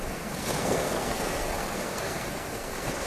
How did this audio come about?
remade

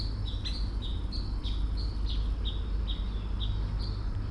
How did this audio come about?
recorded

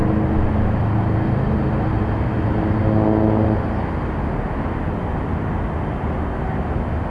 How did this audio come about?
recorded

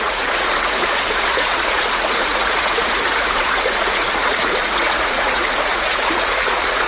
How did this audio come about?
remade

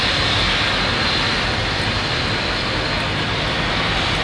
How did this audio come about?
recorded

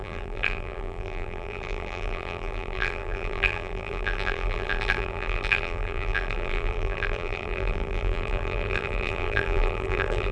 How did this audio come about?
remade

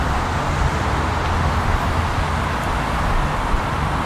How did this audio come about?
recorded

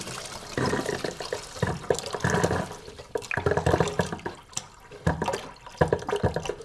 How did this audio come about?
recorded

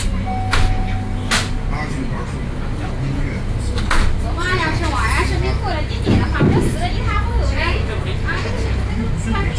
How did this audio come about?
recorded